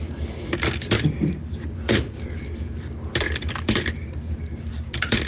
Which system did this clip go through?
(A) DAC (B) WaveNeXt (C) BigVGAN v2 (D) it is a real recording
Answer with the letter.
C